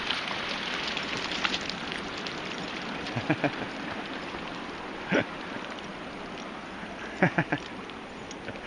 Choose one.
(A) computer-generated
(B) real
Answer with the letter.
B